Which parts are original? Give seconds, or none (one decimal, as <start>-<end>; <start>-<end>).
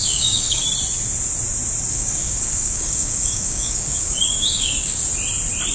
0.6-1.9; 5.0-5.7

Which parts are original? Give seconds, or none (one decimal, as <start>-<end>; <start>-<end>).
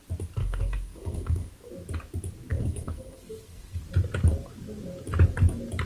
0.0-0.4; 1.5-2.5; 3.8-5.9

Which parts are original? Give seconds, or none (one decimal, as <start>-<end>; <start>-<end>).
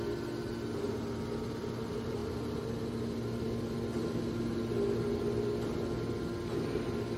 0.0-7.2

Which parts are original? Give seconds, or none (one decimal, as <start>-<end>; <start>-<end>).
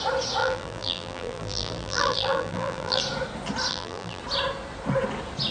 0.0-0.4; 3.0-3.7; 4.2-5.5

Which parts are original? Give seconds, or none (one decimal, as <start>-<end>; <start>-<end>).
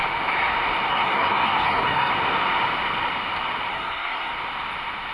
0.0-0.9; 2.1-3.7; 4.3-5.1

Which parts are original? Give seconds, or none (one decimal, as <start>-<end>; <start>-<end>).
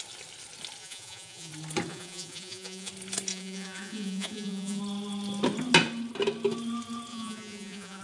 0.0-0.8; 1.5-1.9; 2.9-3.3; 4.8-7.1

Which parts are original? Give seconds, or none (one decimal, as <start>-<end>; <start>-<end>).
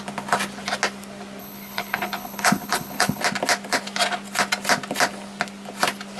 0.0-1.4; 3.2-6.2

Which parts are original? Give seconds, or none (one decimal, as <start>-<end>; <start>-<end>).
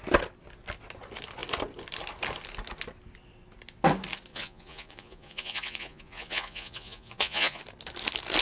0.0-4.3; 7.6-8.4